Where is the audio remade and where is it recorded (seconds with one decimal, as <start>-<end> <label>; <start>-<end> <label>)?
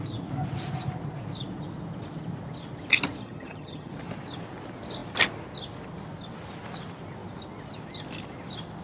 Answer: 0.0-3.2 recorded; 3.2-3.9 remade; 3.9-8.8 recorded